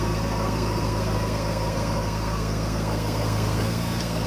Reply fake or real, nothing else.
fake